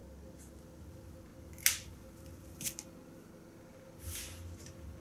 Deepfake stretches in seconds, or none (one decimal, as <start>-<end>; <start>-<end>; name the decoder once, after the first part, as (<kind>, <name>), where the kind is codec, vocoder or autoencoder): none